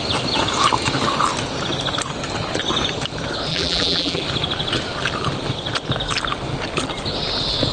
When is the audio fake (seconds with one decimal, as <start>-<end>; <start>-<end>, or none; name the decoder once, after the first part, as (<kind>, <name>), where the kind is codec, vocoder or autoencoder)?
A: 3.5-4.2 (vocoder, BigVGAN v2)